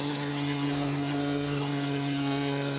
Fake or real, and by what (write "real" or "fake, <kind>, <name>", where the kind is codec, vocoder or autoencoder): fake, codec, SNAC